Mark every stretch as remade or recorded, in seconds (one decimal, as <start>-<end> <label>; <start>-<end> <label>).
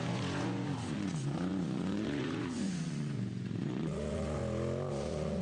0.0-4.4 remade; 4.4-4.9 recorded; 4.9-5.4 remade